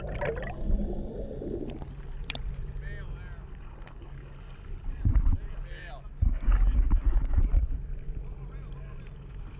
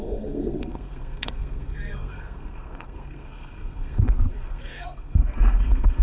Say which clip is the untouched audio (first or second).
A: first